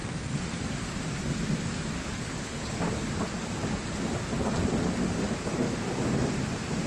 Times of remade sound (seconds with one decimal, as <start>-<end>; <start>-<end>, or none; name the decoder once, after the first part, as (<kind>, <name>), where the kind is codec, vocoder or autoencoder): 2.0-2.8 (codec, HILCodec)